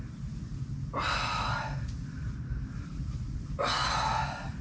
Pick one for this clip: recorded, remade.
recorded